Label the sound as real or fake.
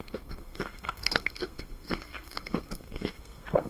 fake